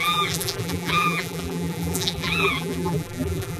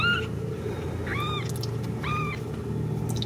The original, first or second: second